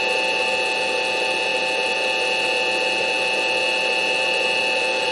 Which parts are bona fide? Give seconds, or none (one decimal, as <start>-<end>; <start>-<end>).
0.0-5.1